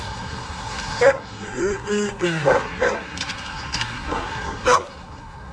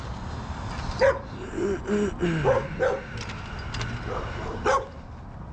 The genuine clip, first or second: second